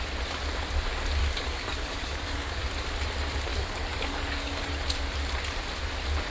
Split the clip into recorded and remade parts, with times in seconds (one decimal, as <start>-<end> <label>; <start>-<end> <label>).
0.0-1.2 recorded; 1.2-2.6 remade; 2.6-3.5 recorded; 3.5-4.7 remade; 4.7-6.3 recorded